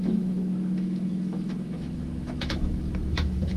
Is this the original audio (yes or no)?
no